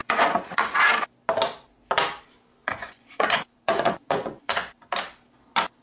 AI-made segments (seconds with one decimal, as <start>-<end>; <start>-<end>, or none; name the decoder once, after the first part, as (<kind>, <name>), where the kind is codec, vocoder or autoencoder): 0.0-0.8 (vocoder, Vocos); 2.6-5.0